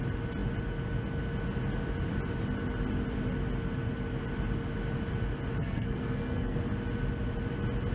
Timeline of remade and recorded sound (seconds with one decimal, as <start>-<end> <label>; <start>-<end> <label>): 0.0-5.6 recorded; 5.6-6.6 remade; 6.6-7.9 recorded